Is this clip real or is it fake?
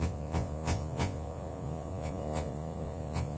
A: fake